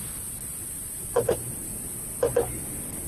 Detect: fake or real real